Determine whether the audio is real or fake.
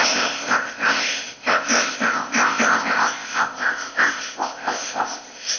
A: fake